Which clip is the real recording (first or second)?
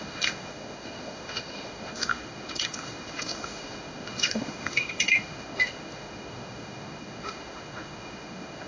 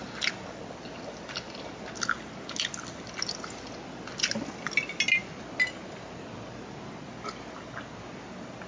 second